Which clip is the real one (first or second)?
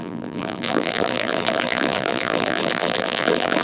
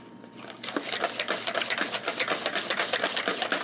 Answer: second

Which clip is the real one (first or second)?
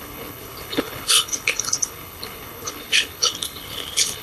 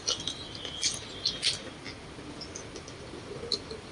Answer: second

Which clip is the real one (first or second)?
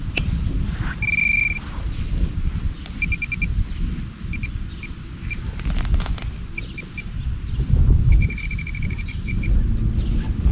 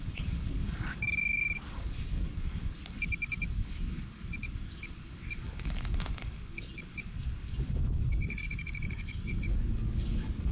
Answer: first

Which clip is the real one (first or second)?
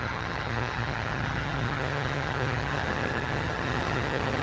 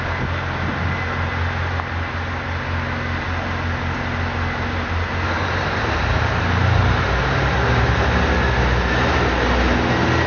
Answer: second